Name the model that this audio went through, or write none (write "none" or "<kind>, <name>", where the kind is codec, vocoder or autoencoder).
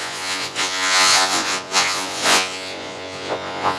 vocoder, Vocos